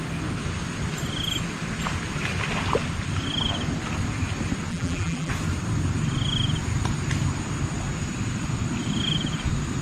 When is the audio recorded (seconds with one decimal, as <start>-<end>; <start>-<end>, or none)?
0.0-4.7; 5.3-9.8